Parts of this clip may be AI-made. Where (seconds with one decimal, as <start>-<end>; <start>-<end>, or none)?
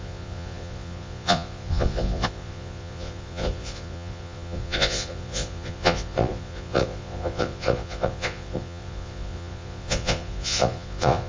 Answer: 0.0-11.3